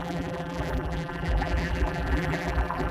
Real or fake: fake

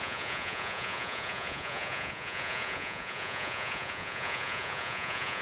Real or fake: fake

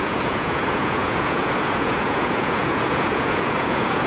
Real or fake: fake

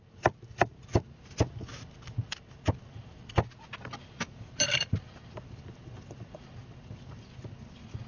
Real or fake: real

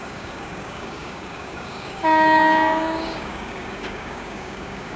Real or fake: fake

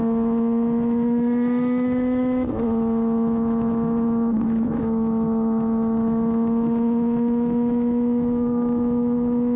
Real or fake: fake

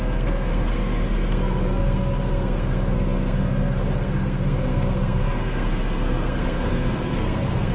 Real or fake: fake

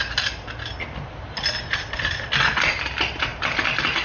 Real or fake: real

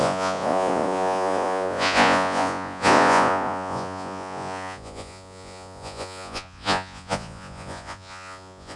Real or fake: fake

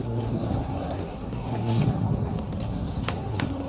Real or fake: fake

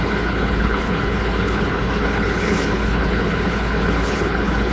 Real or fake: fake